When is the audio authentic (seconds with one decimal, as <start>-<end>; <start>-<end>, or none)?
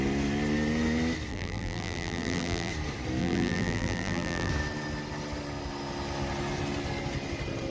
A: 0.0-1.3; 2.7-3.2; 4.5-7.7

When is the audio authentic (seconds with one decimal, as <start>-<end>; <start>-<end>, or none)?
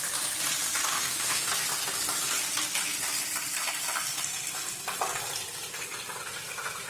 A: 0.0-0.9; 1.5-6.9